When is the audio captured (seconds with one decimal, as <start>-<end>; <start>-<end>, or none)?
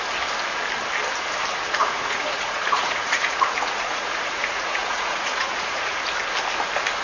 0.0-1.8; 6.0-7.0